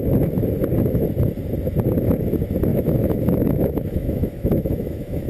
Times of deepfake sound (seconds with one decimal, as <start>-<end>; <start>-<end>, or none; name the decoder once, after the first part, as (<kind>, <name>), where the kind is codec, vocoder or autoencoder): 2.7-5.3 (autoencoder, DAC-VAE)